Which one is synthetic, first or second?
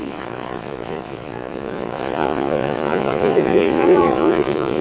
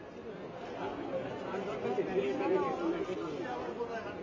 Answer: first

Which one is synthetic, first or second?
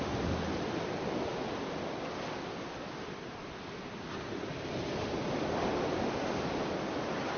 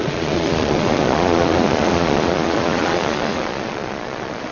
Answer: second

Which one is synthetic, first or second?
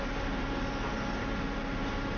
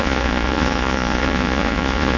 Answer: second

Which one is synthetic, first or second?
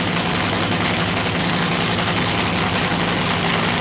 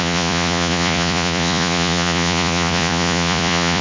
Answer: second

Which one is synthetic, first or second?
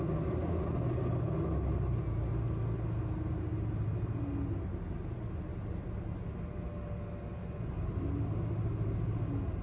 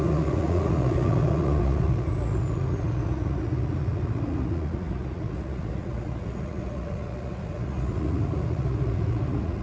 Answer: second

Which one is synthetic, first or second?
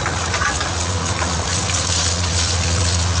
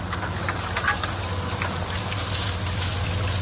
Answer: first